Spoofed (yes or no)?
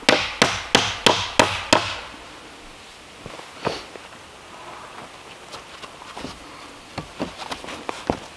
no